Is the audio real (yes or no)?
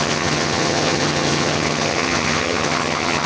no